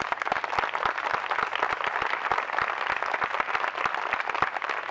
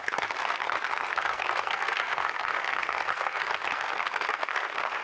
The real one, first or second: first